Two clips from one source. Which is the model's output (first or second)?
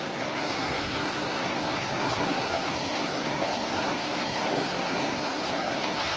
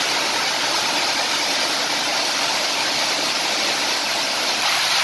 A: first